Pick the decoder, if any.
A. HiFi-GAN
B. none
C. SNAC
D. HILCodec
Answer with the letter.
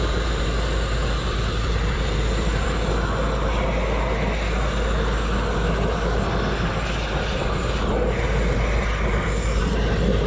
B